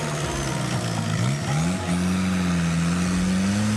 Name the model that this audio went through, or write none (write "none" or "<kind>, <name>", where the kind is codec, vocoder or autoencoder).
none